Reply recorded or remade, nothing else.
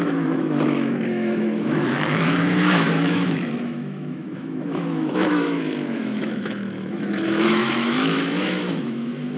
remade